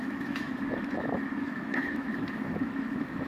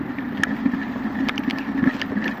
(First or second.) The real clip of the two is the second